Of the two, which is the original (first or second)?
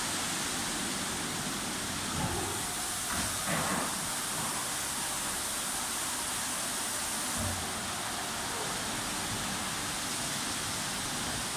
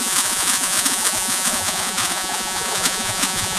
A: first